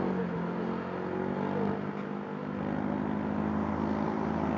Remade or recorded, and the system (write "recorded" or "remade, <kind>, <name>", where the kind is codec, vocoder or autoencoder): recorded